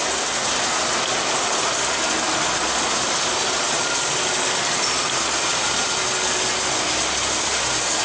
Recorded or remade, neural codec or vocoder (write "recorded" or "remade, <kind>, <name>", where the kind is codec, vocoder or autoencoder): recorded